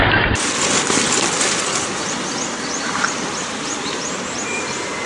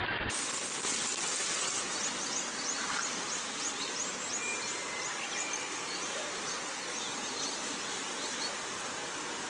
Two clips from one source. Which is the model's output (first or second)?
first